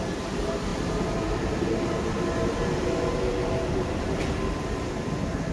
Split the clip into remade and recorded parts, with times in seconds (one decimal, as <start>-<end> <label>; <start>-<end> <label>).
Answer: 0.0-5.5 recorded